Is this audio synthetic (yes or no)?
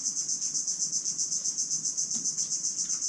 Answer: no